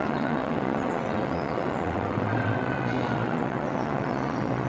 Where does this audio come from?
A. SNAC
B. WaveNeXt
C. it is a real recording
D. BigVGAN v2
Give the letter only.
B